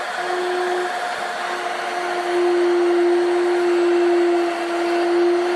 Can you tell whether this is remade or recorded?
recorded